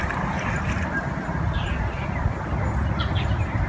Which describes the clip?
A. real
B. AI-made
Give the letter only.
A